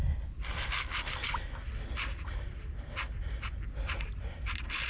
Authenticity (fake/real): real